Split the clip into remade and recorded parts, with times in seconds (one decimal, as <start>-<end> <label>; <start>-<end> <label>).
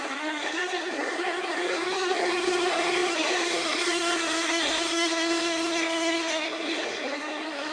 0.0-7.7 remade